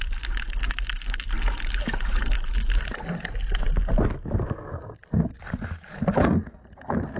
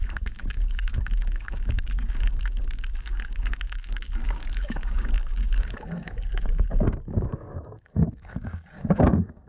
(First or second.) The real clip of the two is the first